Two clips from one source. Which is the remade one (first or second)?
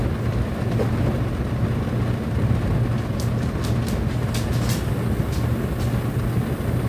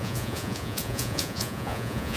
second